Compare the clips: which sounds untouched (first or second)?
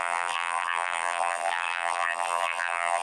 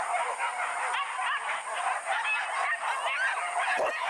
second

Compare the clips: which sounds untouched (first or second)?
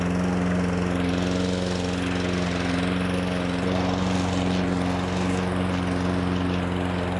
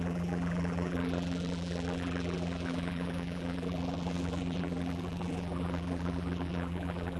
first